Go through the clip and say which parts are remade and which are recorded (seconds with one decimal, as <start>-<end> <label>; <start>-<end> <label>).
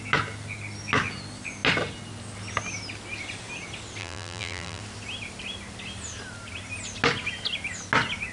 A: 0.0-4.0 recorded; 4.0-4.8 remade; 4.8-8.3 recorded